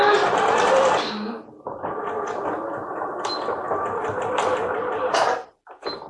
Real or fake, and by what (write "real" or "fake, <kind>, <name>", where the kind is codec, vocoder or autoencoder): real